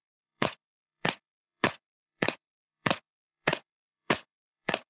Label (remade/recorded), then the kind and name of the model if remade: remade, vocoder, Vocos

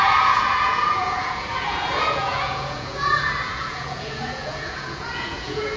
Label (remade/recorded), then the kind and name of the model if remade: remade, vocoder, Vocos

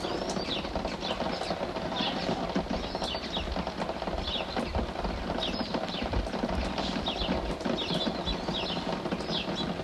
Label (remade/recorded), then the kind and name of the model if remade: recorded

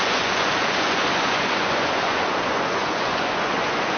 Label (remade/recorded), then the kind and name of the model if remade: remade, vocoder, Vocos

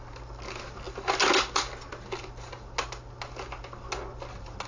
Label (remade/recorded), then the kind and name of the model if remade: recorded